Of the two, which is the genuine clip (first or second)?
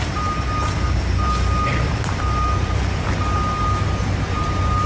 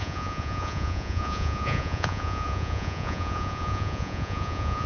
first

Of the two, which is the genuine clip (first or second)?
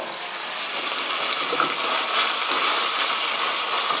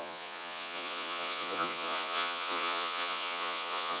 first